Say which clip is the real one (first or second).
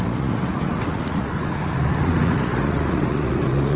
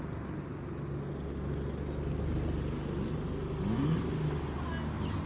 second